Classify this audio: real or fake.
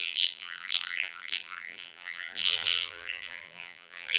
fake